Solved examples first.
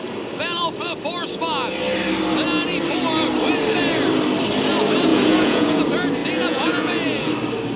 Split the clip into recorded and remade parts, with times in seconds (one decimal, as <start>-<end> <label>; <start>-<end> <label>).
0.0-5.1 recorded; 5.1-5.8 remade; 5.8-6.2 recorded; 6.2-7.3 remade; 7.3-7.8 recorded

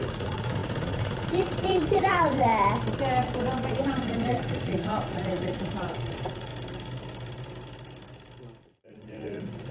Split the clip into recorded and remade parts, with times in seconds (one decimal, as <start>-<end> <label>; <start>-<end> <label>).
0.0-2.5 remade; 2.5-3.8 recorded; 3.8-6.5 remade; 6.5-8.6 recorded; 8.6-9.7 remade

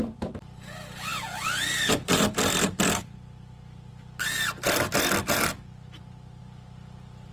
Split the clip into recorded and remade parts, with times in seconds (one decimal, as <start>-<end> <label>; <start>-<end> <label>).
0.0-7.3 recorded

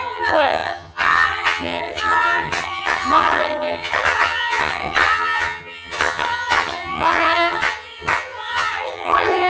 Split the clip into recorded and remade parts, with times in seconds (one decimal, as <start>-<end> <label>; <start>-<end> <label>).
0.0-9.5 remade

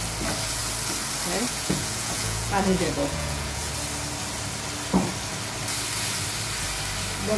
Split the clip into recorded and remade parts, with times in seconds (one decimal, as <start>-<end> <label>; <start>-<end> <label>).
0.0-1.5 recorded; 1.5-3.7 remade; 3.7-7.4 recorded

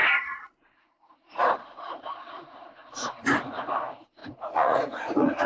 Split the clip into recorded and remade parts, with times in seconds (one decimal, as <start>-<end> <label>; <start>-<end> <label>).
0.0-4.2 recorded; 4.2-5.5 remade

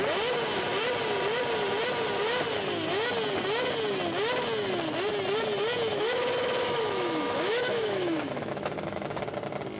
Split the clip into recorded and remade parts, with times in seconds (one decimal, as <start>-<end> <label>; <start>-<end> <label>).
0.0-5.9 recorded; 5.9-9.2 remade; 9.2-9.8 recorded